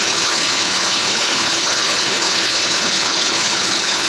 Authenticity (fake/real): fake